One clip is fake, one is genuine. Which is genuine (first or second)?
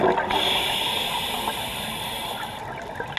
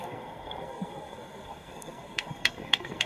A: first